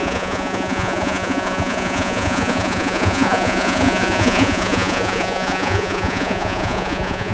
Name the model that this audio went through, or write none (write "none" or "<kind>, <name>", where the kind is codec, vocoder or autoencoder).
vocoder, Vocos